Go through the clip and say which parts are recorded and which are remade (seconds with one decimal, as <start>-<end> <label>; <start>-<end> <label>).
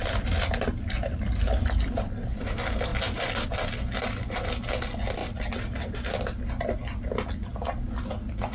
0.0-5.2 recorded; 5.2-6.1 remade; 6.1-8.5 recorded